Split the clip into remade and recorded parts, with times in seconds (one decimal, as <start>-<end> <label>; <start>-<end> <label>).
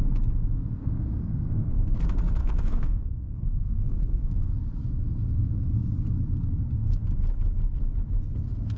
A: 0.0-0.8 recorded; 0.8-1.7 remade; 1.7-2.4 recorded; 2.4-4.5 remade; 4.5-8.8 recorded